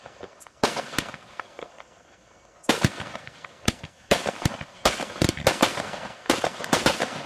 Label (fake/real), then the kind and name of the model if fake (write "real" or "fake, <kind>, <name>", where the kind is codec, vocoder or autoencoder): fake, codec, SNAC